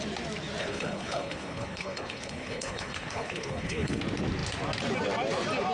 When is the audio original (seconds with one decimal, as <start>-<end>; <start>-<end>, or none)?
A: 0.0-0.6; 4.0-5.7